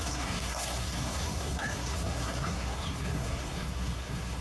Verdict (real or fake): fake